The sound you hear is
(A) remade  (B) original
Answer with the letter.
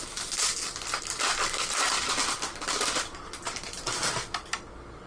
B